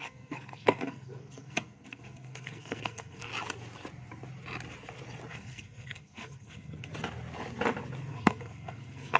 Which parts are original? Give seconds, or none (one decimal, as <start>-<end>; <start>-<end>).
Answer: 3.3-5.3; 6.9-8.1